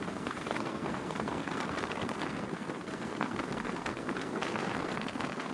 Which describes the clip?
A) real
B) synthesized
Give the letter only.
B